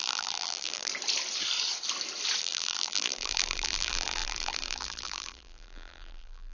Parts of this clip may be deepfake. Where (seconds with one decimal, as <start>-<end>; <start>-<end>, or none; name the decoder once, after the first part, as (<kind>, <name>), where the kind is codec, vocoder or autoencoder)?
0.0-0.9 (vocoder, BigVGAN v2); 2.4-6.5